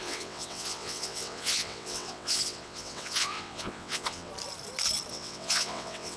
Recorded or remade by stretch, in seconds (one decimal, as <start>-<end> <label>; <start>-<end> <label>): 0.0-4.3 remade; 4.3-5.1 recorded; 5.1-6.2 remade